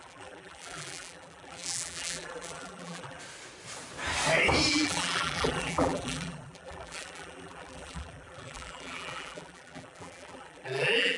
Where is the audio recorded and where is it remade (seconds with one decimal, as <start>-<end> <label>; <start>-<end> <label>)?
0.0-3.2 remade; 3.2-4.7 recorded; 4.7-11.2 remade